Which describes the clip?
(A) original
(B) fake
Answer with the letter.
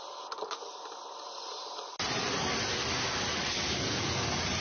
A